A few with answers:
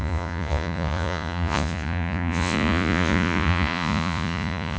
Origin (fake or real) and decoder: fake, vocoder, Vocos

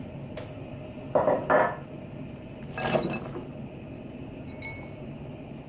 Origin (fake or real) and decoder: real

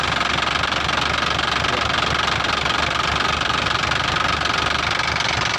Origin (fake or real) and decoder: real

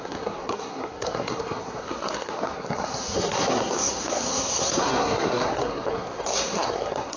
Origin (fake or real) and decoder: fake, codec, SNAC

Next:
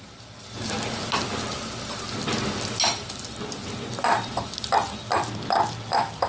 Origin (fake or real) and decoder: real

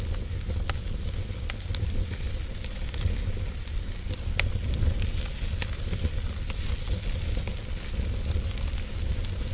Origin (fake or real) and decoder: real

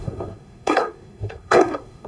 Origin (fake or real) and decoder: fake, codec, SNAC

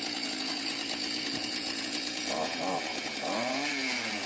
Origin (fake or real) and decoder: fake, vocoder, Vocos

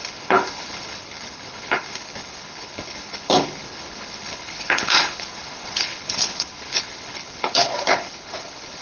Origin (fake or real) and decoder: fake, codec, HILCodec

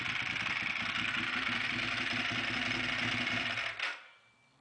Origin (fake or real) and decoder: real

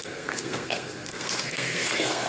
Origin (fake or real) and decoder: fake, codec, SNAC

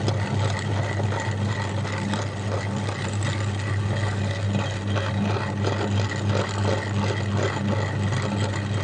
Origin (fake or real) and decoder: real